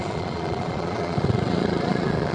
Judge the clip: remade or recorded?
remade